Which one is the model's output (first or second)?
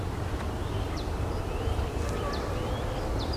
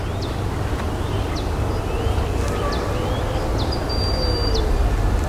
first